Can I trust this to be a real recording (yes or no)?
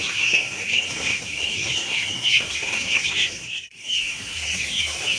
no